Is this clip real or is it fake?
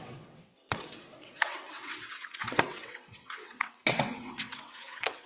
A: fake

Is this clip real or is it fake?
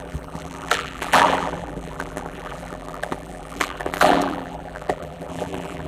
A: fake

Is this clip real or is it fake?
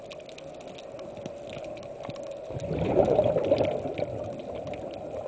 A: real